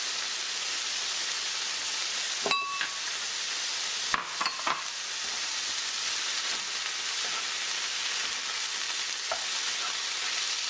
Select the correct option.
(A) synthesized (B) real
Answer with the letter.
B